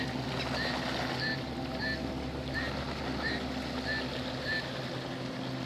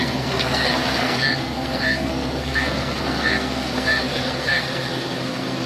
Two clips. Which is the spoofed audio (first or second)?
second